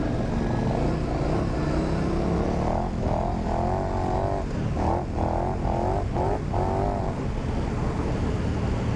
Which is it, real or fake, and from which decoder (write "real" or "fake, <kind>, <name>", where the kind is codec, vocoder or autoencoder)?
real